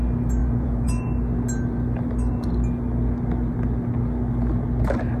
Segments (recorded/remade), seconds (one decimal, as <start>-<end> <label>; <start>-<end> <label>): 0.0-0.4 recorded; 0.4-1.0 remade; 1.0-5.2 recorded